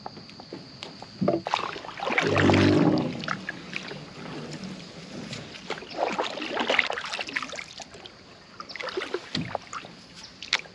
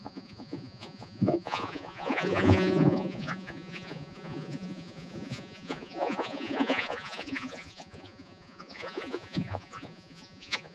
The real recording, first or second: first